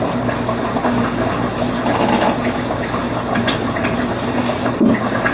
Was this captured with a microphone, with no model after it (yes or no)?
yes